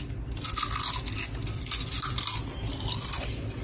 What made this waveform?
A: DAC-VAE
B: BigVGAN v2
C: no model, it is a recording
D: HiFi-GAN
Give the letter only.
C